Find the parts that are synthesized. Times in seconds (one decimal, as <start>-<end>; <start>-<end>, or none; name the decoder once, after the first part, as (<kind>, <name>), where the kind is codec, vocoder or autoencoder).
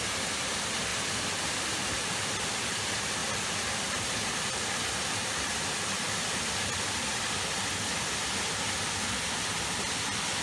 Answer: 0.9-1.9 (vocoder, BigVGAN v2); 3.2-4.1; 7.1-7.6